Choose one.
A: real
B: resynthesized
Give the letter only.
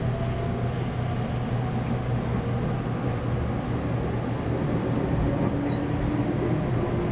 A